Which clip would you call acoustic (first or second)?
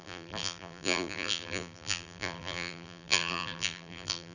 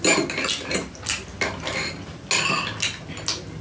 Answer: second